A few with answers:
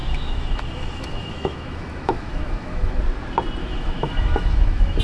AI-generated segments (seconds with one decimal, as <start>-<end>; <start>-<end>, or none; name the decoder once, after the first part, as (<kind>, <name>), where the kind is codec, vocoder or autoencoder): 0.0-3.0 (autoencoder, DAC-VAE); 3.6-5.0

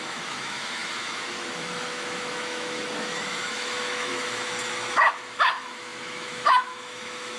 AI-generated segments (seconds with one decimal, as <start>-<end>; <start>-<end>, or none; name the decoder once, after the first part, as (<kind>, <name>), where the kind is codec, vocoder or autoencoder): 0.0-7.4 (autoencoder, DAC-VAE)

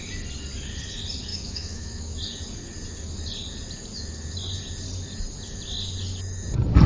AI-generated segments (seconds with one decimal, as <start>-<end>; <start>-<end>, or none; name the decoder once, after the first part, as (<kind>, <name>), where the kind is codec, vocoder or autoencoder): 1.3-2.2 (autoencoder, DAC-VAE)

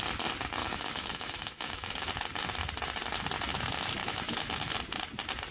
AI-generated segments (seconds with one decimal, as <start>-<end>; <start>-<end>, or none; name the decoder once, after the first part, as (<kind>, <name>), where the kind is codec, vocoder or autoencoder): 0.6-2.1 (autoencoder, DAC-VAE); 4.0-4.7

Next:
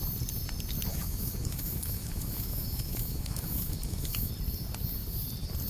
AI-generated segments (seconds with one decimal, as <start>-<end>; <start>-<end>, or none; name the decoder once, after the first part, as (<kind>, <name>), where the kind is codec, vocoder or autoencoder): 0.9-4.3 (autoencoder, DAC-VAE)